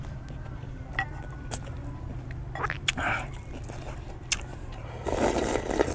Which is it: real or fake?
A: real